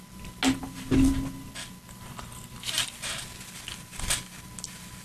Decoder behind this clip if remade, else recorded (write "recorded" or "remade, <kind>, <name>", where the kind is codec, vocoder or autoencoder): recorded